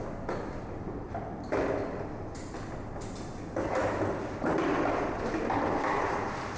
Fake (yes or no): no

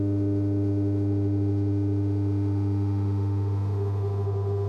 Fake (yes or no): yes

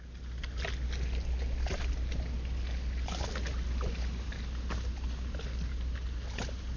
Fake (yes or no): no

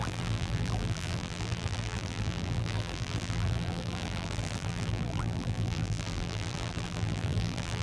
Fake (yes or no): yes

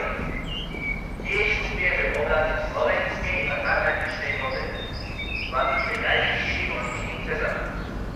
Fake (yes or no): yes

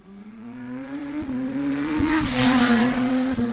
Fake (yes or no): yes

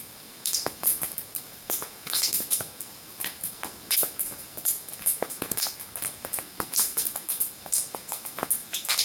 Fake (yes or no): yes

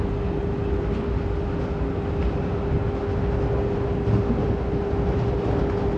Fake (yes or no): no